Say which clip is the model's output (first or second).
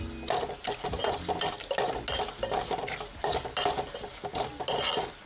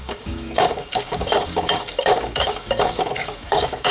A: second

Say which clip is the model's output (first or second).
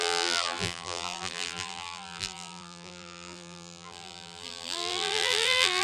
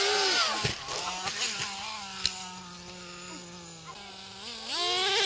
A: first